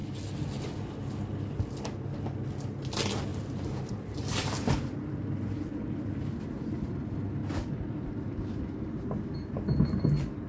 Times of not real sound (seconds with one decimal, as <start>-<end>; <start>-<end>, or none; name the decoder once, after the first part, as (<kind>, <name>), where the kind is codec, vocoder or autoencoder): 3.3-3.9 (vocoder, BigVGAN v2); 7.4-8.4